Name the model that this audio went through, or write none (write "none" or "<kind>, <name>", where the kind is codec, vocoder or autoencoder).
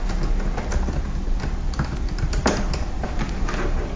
none